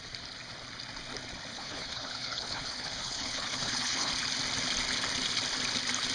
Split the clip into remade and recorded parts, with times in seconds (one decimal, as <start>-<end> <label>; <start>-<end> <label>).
0.0-1.5 recorded; 1.5-4.1 remade; 4.1-6.1 recorded